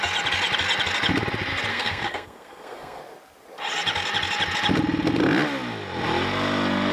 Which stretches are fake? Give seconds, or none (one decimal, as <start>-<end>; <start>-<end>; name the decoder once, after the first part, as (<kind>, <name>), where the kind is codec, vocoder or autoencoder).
1.7-3.0 (codec, SNAC)